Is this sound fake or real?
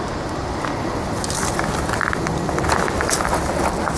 real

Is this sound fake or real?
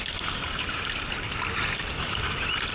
real